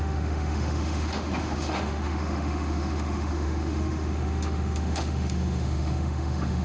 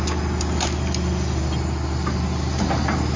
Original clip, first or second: second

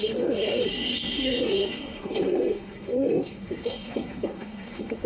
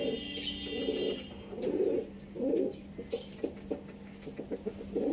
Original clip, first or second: second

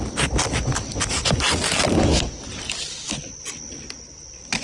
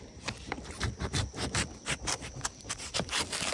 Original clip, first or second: first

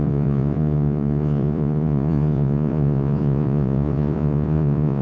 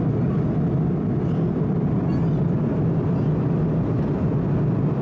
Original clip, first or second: second